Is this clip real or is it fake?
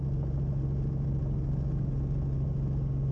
real